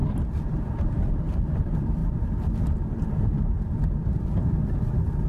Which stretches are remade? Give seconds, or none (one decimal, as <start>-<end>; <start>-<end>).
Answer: 0.0-5.3